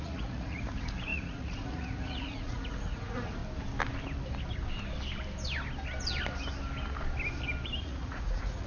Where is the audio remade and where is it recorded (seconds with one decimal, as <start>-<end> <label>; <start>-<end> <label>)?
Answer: 0.0-3.4 remade; 3.4-7.8 recorded; 7.8-8.7 remade